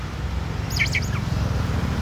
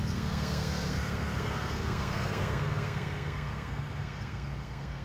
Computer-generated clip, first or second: second